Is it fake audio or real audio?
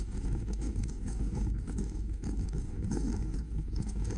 fake